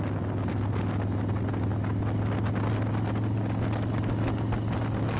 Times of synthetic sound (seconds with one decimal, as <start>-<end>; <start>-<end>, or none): none